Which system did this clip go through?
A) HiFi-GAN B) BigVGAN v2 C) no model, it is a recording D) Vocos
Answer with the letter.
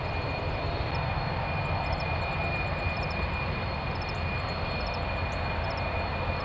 C